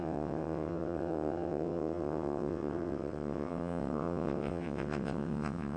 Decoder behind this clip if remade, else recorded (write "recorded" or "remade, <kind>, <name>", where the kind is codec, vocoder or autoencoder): remade, vocoder, WaveNeXt